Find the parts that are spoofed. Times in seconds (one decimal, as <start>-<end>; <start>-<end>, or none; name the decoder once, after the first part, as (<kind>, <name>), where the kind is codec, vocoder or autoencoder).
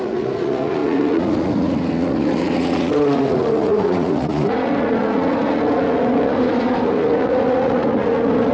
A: 0.0-8.5 (vocoder, Vocos)